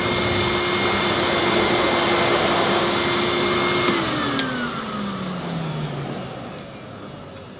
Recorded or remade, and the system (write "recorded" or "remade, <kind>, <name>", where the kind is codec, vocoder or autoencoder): recorded